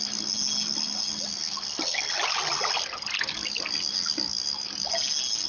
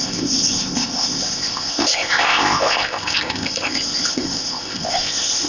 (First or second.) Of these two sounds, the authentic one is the first